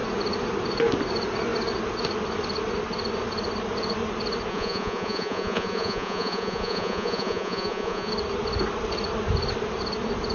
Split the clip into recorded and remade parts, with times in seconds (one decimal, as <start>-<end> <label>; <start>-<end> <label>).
0.0-4.5 recorded; 4.5-8.1 remade; 8.1-10.3 recorded